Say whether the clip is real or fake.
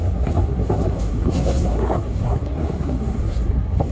fake